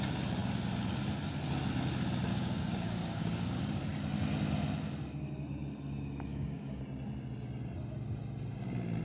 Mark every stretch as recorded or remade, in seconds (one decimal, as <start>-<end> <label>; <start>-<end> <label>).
0.0-2.3 recorded; 2.3-3.6 remade; 3.6-6.3 recorded; 6.3-6.8 remade; 6.8-9.0 recorded